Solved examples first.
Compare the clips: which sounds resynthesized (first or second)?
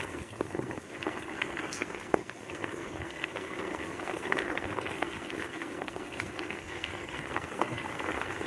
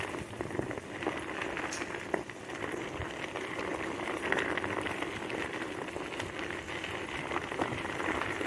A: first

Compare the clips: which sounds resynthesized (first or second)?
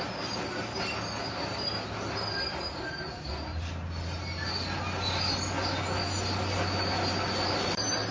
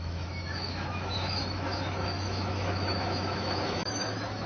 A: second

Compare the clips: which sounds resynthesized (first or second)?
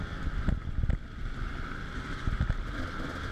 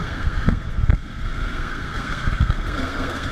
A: second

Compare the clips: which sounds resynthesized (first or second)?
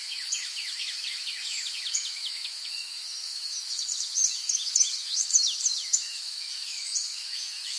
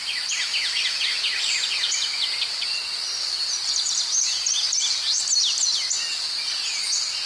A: first